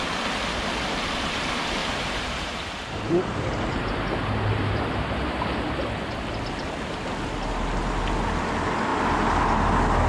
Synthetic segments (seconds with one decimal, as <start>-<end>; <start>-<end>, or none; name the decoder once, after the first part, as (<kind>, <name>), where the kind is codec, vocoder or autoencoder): 1.8-4.8 (vocoder, BigVGAN v2)